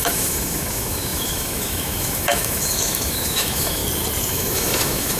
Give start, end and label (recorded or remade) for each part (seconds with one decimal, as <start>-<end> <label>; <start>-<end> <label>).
0.0-3.8 remade; 3.8-4.3 recorded; 4.3-5.2 remade